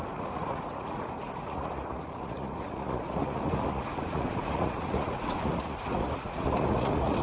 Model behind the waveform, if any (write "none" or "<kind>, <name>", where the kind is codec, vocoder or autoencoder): vocoder, Vocos